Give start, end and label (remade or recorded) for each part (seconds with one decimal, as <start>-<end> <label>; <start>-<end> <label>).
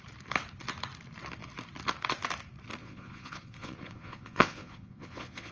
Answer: 0.0-2.8 recorded; 2.8-5.5 remade